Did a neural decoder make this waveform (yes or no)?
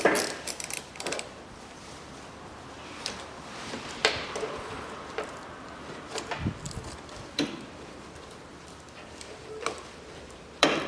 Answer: yes